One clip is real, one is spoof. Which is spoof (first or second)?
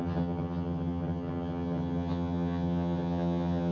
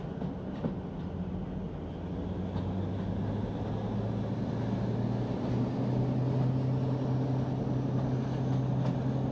first